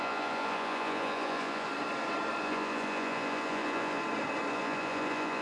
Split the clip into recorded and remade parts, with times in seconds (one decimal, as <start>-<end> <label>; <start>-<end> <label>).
0.0-1.7 remade; 1.7-2.4 recorded; 2.4-4.0 remade; 4.0-4.5 recorded; 4.5-5.4 remade